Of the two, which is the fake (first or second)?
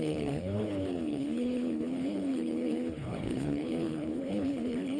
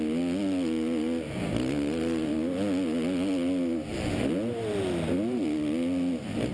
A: first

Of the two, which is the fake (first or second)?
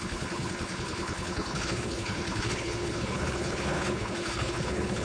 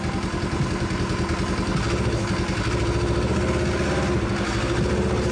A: first